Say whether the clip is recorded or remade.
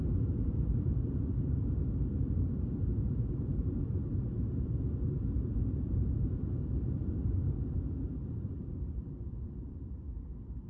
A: remade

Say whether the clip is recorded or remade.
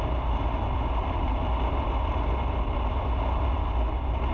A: recorded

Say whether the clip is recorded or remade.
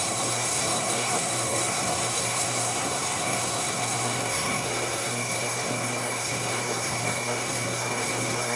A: remade